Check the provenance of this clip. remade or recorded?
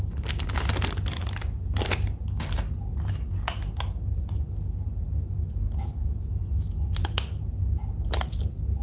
recorded